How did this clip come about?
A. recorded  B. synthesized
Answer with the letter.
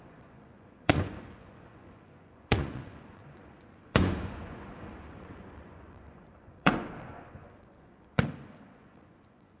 B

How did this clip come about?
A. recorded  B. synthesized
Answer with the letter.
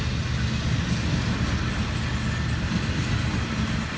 A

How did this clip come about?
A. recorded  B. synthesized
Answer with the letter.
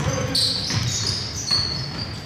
A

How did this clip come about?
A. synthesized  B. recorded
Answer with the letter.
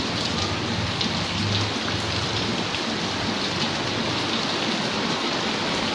B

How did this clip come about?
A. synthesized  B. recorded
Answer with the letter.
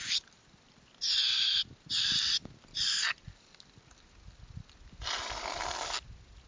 B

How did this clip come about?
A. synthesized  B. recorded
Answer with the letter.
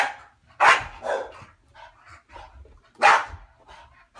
B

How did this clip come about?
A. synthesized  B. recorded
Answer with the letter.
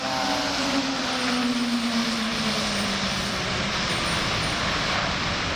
B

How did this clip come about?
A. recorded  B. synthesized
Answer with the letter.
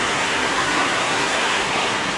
B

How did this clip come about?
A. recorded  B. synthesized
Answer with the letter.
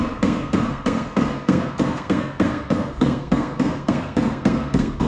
B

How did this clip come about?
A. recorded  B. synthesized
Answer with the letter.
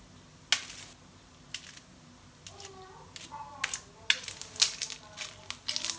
A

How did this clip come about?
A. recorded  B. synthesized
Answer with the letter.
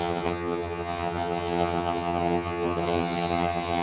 B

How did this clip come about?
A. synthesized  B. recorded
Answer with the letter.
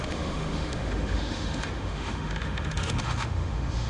A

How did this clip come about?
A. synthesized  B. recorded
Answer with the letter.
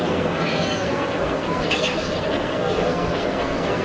A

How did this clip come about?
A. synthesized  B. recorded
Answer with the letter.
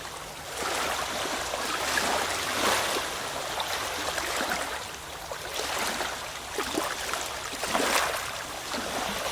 B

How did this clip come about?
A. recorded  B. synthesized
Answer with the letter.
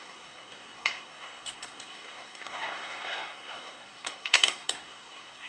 B